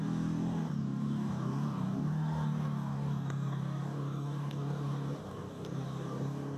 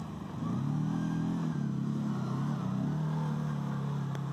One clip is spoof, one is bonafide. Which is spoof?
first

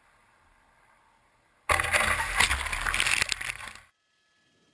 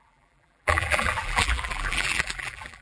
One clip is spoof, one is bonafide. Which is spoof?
second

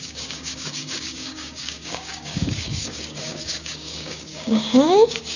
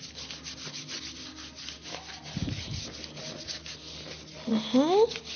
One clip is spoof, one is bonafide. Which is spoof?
first